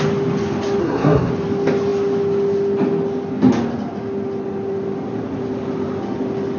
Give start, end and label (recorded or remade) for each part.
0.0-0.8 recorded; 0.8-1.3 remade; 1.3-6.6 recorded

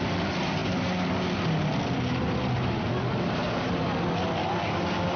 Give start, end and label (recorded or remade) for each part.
0.0-5.2 recorded

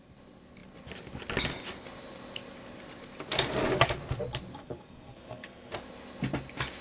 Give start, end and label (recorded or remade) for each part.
0.0-4.6 recorded; 4.6-5.7 remade; 5.7-6.8 recorded

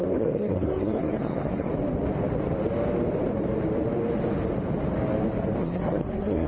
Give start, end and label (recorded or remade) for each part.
0.0-1.7 remade; 1.7-5.6 recorded; 5.6-6.5 remade

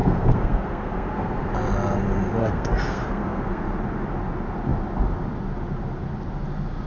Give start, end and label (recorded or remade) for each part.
0.0-1.4 remade; 1.4-2.4 recorded; 2.4-3.6 remade; 3.6-6.9 recorded

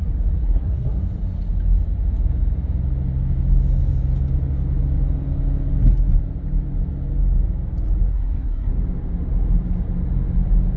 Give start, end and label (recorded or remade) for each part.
0.0-0.4 recorded; 0.4-1.0 remade; 1.0-8.1 recorded; 8.1-8.7 remade; 8.7-10.8 recorded

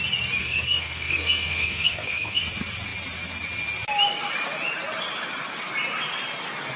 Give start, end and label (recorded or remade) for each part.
0.0-0.4 recorded; 0.4-2.4 remade; 2.4-6.8 recorded

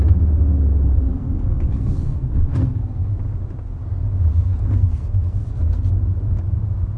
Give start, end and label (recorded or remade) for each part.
0.0-1.0 recorded; 1.0-3.1 remade; 3.1-4.3 recorded; 4.3-5.9 remade; 5.9-7.0 recorded